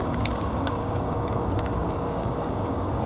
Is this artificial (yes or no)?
yes